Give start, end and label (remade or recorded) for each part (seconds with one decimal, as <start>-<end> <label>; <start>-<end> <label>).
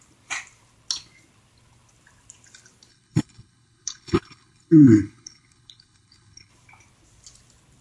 0.0-2.9 recorded; 2.9-6.5 remade; 6.5-7.8 recorded